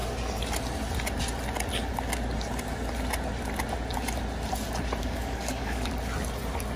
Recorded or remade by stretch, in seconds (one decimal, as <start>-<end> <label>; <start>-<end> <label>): 0.0-5.0 recorded; 5.0-5.9 remade; 5.9-6.8 recorded